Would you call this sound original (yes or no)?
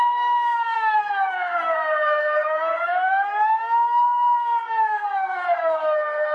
no